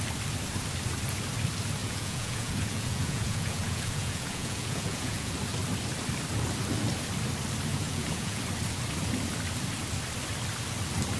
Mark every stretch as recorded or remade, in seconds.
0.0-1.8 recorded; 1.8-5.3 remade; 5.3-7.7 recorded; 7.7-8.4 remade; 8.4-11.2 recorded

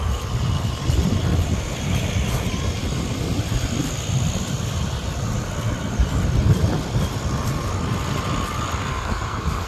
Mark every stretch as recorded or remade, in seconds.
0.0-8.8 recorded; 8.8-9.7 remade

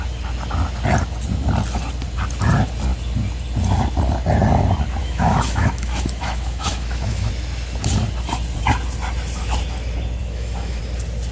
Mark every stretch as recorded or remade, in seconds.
0.0-5.0 recorded; 5.0-7.3 remade; 7.3-10.2 recorded; 10.2-10.8 remade; 10.8-11.3 recorded

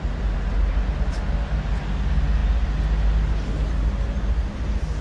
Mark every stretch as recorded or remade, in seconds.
0.0-5.0 recorded